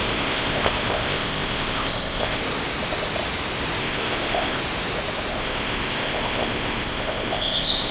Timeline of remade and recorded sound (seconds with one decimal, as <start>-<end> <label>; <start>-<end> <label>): 0.0-2.4 remade; 2.4-3.8 recorded; 3.8-4.6 remade; 4.6-5.3 recorded; 5.3-7.9 remade